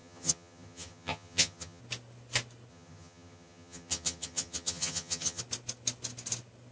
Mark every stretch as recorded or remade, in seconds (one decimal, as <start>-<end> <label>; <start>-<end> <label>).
0.0-1.8 remade; 1.8-2.7 recorded; 2.7-5.4 remade; 5.4-6.7 recorded